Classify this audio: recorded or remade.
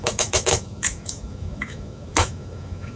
remade